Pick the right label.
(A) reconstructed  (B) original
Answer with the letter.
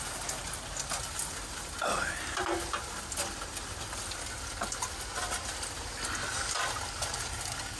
B